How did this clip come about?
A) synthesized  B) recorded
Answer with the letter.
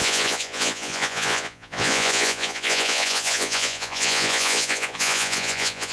A